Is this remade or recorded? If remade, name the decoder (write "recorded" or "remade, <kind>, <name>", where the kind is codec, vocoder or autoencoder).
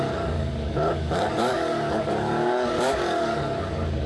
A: remade, codec, DAC